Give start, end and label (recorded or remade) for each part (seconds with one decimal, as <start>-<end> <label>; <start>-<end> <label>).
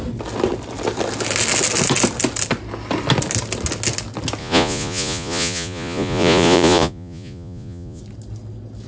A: 0.0-4.4 recorded; 4.4-8.0 remade; 8.0-8.9 recorded